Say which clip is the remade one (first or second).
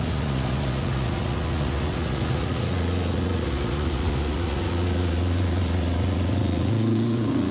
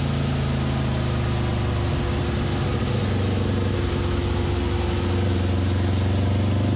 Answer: first